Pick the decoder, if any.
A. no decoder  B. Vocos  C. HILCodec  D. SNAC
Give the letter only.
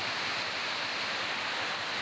A